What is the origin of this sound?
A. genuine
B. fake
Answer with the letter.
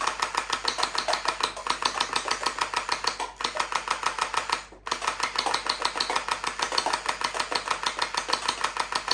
A